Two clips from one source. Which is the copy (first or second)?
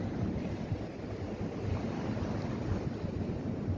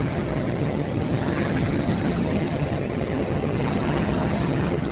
second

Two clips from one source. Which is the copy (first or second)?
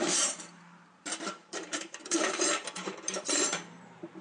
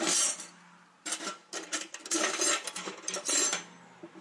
first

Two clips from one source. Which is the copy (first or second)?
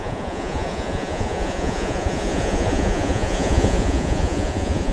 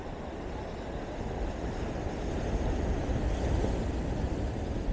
first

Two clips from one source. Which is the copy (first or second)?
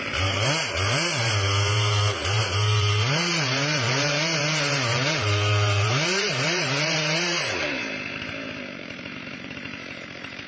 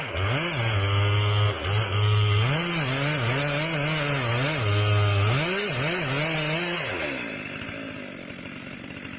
first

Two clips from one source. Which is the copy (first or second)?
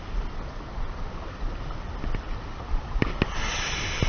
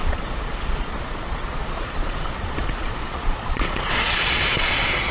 second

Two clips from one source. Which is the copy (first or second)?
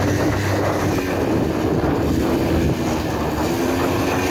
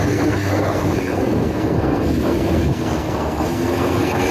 second